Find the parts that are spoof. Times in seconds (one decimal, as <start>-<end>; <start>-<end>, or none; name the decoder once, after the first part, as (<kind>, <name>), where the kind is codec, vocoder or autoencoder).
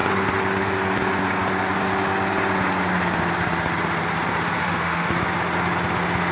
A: 4.6-5.1 (autoencoder, DAC-VAE)